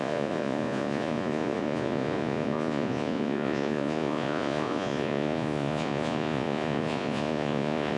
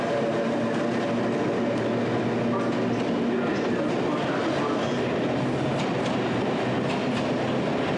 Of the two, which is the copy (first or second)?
first